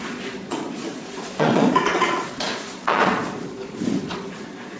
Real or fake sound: fake